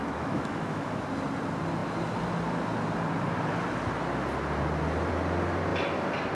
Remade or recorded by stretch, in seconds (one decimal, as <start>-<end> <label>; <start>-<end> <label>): 0.0-1.0 remade; 1.0-6.3 recorded